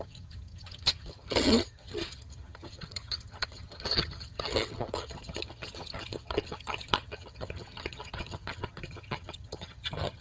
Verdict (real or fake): fake